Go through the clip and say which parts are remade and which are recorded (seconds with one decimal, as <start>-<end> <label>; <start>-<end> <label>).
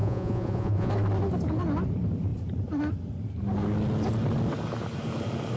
0.0-0.9 remade; 0.9-5.6 recorded